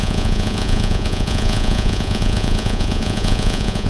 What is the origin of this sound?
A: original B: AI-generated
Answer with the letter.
B